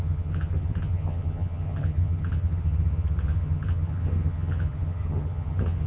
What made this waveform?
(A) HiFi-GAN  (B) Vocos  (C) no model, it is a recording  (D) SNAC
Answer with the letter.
A